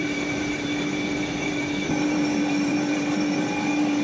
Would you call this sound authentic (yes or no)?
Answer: no